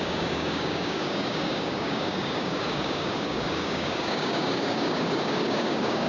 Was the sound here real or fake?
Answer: fake